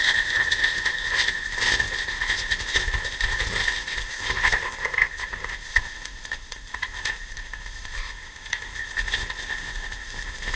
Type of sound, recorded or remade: remade